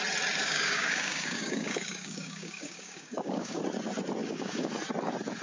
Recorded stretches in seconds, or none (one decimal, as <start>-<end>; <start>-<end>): 0.0-0.4; 3.6-4.2; 4.7-5.4

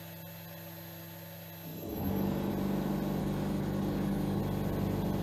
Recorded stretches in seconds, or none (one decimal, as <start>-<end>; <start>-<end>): 0.0-1.7; 2.5-3.2; 4.4-5.2

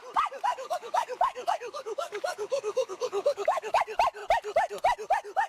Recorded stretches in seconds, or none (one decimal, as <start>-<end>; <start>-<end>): 0.0-0.5; 3.8-5.5

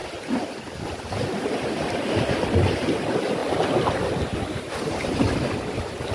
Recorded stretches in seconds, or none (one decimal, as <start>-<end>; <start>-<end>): 0.0-6.1

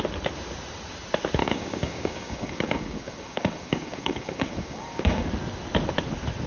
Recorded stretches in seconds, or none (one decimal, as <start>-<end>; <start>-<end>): 0.0-1.4; 5.3-6.5

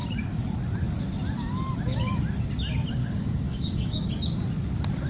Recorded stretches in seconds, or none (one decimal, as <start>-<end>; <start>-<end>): 0.0-3.0; 4.1-5.1

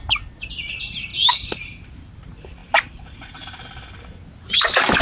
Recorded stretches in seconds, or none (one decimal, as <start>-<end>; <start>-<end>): 0.0-5.0